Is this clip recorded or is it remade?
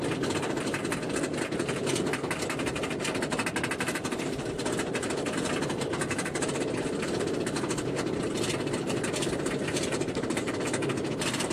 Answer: remade